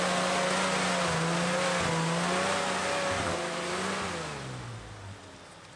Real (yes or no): yes